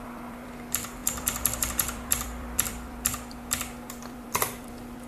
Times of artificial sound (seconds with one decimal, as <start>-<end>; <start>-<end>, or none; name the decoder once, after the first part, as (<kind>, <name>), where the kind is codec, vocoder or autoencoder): 0.0-5.1 (vocoder, BigVGAN v2)